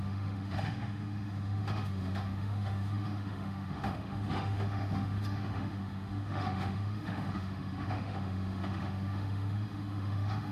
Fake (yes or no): yes